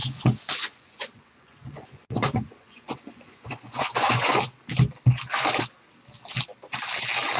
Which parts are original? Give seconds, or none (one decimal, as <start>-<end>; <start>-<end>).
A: 4.4-7.4